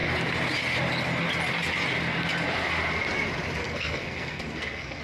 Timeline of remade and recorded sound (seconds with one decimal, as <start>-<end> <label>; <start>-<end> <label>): 0.0-3.6 recorded; 3.6-5.0 remade